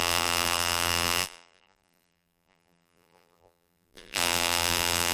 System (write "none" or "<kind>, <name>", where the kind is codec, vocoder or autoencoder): vocoder, BigVGAN v2